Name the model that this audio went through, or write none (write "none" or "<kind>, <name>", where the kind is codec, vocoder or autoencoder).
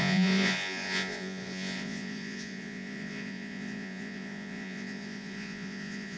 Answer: vocoder, Vocos